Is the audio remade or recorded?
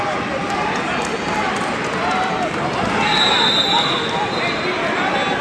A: recorded